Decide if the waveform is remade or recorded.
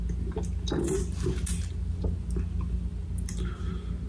recorded